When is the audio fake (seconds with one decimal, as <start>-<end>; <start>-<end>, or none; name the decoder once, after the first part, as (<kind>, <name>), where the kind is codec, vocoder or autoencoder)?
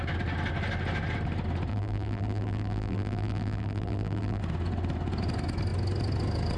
1.7-4.4 (vocoder, BigVGAN v2)